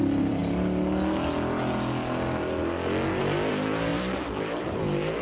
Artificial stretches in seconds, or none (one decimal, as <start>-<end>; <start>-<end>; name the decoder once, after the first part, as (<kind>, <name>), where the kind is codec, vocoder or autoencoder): 0.0-0.4 (vocoder, BigVGAN v2); 3.5-5.2

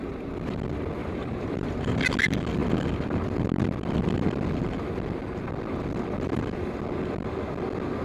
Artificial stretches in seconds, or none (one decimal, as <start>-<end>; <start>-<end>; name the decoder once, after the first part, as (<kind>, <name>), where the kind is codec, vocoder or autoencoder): 1.0-2.0 (vocoder, BigVGAN v2)

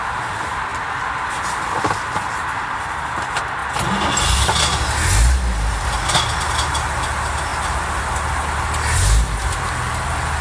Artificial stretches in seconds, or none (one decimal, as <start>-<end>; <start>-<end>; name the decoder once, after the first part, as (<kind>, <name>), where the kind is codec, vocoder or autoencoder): none

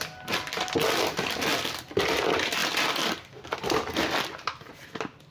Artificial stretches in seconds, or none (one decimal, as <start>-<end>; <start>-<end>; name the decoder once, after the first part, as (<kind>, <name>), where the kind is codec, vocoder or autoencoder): 2.6-4.7 (vocoder, BigVGAN v2)